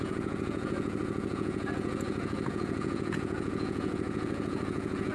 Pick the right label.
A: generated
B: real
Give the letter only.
A